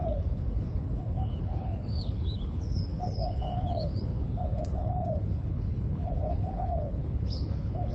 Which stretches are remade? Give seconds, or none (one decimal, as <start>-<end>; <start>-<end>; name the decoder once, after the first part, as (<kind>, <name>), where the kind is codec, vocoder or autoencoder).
0.0-7.9 (codec, HILCodec)